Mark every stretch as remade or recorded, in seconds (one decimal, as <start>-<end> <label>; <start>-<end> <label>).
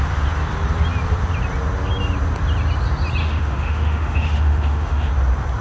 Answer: 0.0-3.2 recorded; 3.2-5.1 remade; 5.1-5.6 recorded